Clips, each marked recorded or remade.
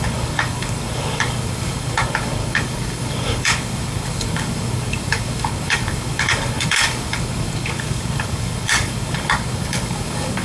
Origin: remade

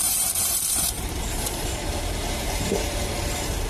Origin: remade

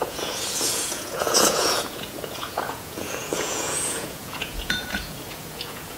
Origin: remade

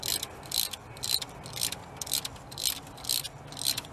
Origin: recorded